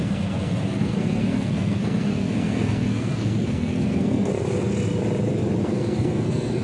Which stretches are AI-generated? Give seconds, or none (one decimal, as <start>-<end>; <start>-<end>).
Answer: 0.0-4.3; 5.6-6.6